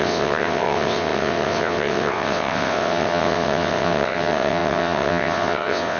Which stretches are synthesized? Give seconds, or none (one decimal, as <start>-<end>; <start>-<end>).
0.0-6.0